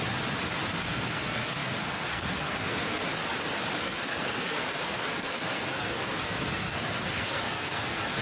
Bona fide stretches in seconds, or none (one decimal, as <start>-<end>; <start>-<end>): 0.0-0.8; 3.0-3.8

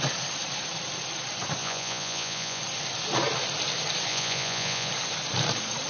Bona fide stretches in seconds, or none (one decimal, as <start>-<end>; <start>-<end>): 0.0-1.6; 2.6-4.1; 4.9-5.9

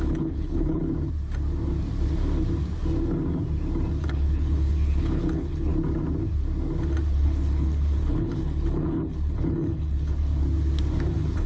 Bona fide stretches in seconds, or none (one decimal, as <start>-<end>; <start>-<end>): 0.8-4.0; 5.7-7.1; 10.3-11.1

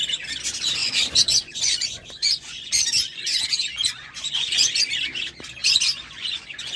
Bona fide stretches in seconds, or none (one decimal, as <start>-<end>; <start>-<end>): 0.0-0.8; 4.9-5.6

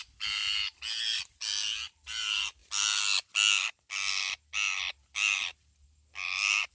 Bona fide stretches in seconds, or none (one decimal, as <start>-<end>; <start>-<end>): 0.0-6.7